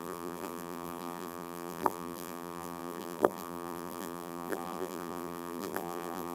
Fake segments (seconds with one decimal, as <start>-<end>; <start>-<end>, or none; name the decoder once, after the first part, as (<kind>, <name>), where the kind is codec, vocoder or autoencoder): 0.0-6.3 (vocoder, BigVGAN v2)